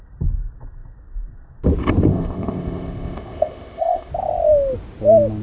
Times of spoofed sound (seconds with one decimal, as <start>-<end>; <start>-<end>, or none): 2.1-4.1